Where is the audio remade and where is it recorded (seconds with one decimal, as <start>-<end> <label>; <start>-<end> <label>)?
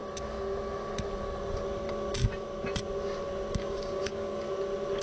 0.0-3.6 recorded; 3.6-4.4 remade; 4.4-5.0 recorded